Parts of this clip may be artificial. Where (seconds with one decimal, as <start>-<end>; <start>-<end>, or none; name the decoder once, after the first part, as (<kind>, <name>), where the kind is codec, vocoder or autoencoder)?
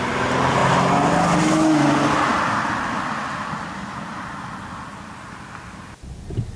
none